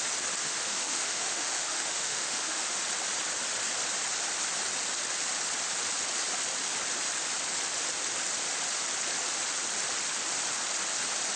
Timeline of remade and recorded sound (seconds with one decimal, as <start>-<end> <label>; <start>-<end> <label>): 0.0-0.4 recorded; 0.4-2.8 remade; 2.8-11.4 recorded

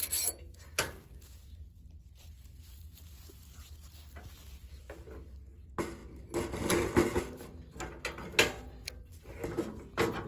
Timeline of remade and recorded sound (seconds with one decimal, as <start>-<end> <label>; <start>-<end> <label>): 0.0-10.3 recorded